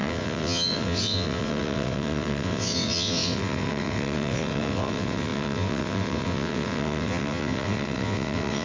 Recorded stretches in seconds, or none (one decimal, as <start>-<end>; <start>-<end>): none